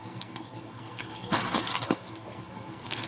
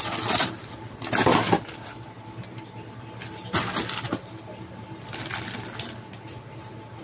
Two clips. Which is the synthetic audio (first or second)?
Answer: first